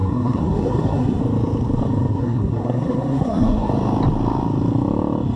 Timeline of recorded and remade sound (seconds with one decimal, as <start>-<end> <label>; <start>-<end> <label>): 0.0-1.2 remade; 1.2-2.1 recorded; 2.1-3.7 remade; 3.7-5.4 recorded